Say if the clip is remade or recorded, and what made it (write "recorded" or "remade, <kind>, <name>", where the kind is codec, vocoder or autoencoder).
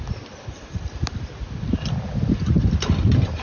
recorded